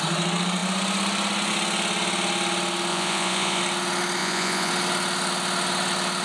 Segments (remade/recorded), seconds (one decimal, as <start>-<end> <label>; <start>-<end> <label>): 0.0-2.9 recorded; 2.9-3.6 remade; 3.6-4.2 recorded; 4.2-4.7 remade; 4.7-6.2 recorded